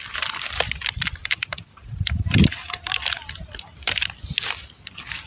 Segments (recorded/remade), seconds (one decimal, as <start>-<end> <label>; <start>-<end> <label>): 0.0-1.2 recorded; 1.2-2.8 remade; 2.8-5.3 recorded